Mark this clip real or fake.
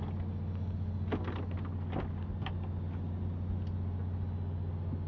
real